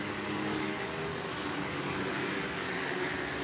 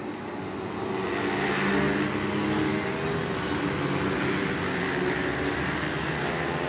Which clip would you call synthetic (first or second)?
first